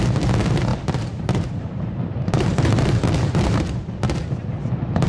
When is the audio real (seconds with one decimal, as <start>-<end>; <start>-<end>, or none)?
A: 0.0-0.7; 3.8-5.1